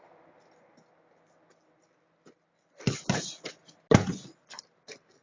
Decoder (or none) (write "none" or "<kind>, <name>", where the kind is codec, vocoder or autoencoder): none